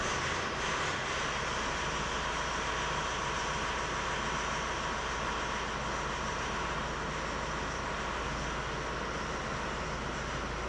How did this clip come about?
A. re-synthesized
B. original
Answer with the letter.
B